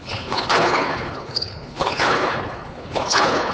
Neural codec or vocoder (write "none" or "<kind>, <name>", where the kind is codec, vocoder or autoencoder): codec, HILCodec